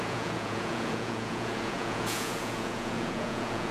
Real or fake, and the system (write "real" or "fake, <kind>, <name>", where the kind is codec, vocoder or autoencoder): fake, vocoder, Vocos